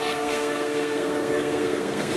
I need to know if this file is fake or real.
fake